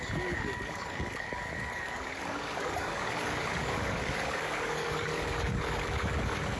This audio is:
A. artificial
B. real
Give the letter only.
A